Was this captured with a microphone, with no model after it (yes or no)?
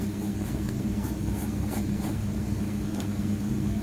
no